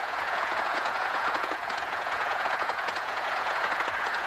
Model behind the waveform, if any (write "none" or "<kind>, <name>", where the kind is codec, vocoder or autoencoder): vocoder, Vocos